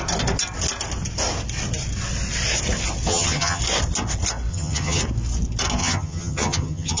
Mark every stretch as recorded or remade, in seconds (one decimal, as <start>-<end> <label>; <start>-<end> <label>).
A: 0.0-3.1 recorded; 3.1-3.6 remade; 3.6-4.5 recorded; 4.5-5.0 remade; 5.0-5.8 recorded; 5.8-7.0 remade